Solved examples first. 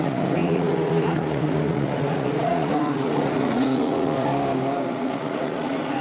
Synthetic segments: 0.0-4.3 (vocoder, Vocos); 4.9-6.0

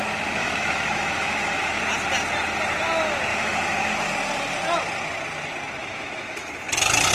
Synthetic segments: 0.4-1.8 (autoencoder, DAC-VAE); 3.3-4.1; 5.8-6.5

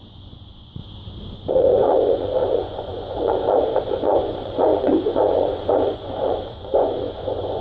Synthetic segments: 0.0-0.8 (vocoder, Vocos); 1.5-7.6

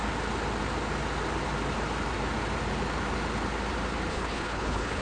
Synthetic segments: 4.1-5.0 (codec, HILCodec)

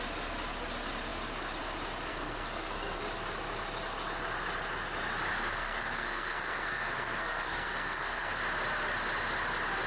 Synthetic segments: 2.1-3.0 (codec, SNAC); 5.5-8.4

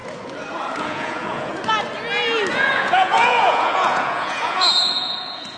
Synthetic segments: 0.8-1.5 (vocoder, Vocos); 2.5-5.6